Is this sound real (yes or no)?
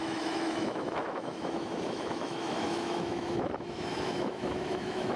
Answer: no